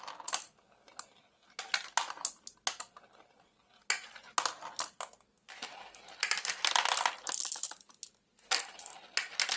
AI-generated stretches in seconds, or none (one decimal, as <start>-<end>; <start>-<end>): none